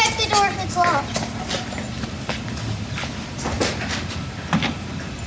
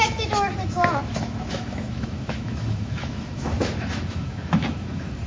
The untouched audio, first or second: first